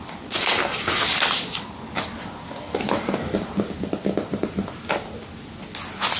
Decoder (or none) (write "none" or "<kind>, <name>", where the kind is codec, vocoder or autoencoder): none